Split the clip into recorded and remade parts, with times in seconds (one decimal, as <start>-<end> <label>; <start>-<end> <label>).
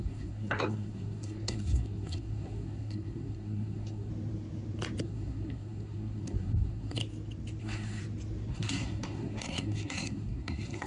0.0-4.1 remade; 4.1-5.0 recorded; 5.0-7.0 remade; 7.0-7.6 recorded; 7.6-8.0 remade; 8.0-8.5 recorded; 8.5-10.9 remade